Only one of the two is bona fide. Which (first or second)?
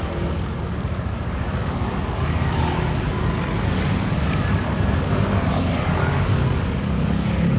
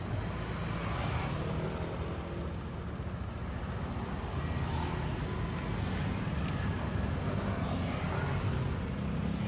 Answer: second